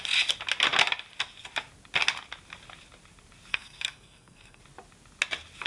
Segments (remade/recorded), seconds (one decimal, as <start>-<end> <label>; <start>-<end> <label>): 0.0-3.5 recorded; 3.5-4.6 remade; 4.6-5.7 recorded